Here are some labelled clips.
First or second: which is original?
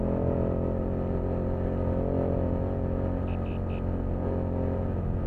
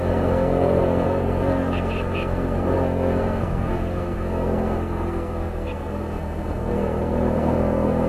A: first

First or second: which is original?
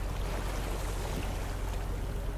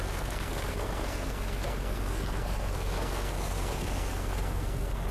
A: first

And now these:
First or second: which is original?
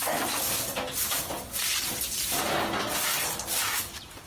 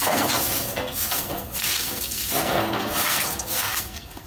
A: first